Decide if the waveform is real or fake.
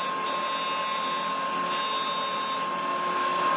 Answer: real